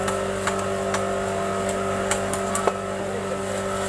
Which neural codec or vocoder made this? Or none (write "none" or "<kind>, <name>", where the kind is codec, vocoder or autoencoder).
none